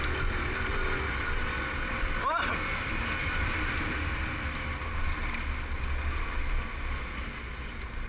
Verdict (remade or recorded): recorded